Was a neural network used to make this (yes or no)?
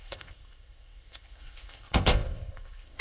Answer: yes